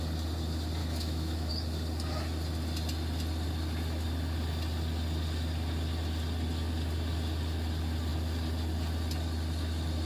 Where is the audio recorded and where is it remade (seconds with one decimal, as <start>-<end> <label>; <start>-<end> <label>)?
0.0-0.8 recorded; 0.8-1.5 remade; 1.5-10.1 recorded